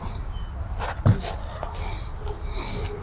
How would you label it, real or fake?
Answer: real